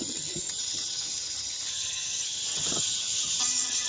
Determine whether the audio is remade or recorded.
remade